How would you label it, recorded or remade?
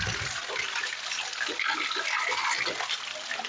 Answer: recorded